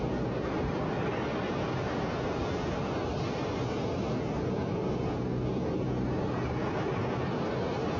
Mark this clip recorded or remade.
recorded